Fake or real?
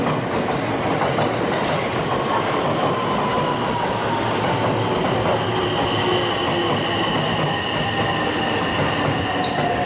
real